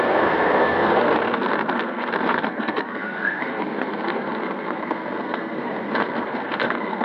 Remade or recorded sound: remade